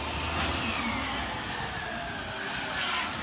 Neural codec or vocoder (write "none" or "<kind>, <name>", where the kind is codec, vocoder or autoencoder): none